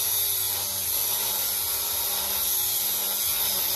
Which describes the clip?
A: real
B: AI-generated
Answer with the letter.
A